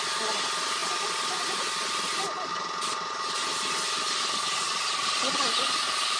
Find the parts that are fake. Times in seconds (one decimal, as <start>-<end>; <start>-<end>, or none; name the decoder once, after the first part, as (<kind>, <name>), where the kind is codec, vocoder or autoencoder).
none